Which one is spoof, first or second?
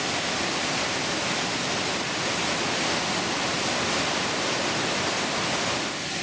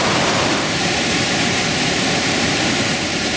second